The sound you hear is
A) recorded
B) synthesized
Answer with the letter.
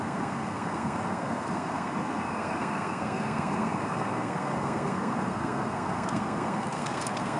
B